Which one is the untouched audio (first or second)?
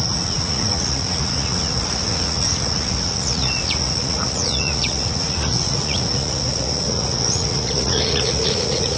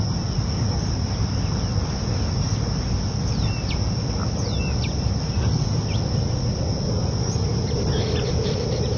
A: second